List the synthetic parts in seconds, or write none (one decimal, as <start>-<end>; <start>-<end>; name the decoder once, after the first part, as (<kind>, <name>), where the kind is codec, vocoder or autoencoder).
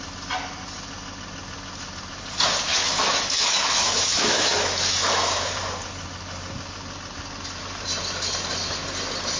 2.7-5.6 (autoencoder, DAC-VAE)